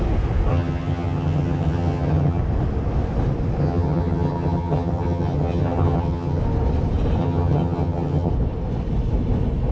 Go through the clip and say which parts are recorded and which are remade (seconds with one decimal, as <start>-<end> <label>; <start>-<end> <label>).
0.0-0.5 recorded; 0.5-2.4 remade; 2.4-3.6 recorded; 3.6-6.4 remade; 6.4-7.2 recorded; 7.2-8.3 remade; 8.3-9.7 recorded